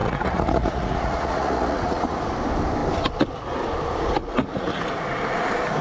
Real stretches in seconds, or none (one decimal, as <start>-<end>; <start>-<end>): 2.2-4.2; 4.8-5.8